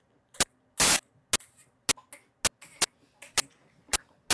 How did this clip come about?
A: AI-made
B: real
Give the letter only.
B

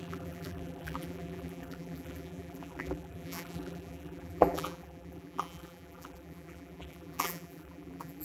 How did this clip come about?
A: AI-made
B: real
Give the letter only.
A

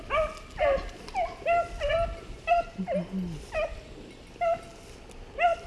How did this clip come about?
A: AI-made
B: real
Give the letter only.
B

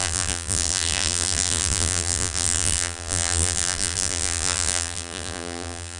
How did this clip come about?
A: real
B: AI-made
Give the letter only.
B